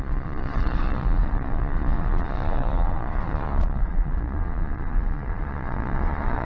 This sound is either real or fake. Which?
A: fake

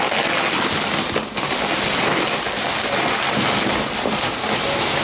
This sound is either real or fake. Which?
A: real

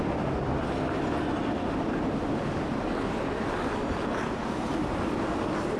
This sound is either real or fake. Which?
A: real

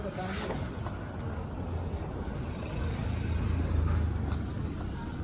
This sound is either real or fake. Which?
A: real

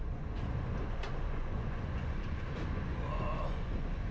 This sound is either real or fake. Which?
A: fake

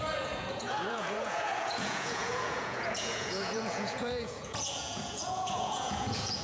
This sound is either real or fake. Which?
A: fake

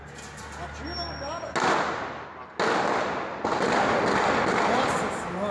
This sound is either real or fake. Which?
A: real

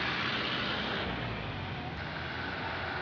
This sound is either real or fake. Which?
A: real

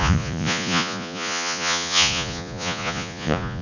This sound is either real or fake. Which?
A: fake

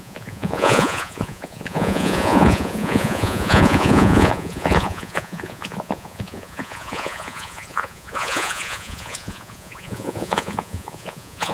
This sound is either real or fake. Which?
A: fake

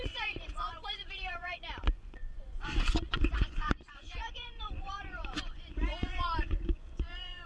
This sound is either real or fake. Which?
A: fake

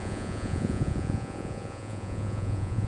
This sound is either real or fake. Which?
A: fake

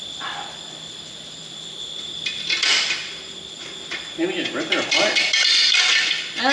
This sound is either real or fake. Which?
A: real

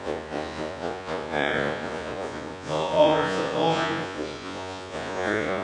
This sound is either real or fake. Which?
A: fake